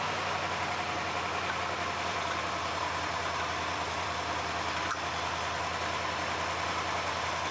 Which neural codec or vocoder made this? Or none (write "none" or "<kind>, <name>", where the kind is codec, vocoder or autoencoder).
none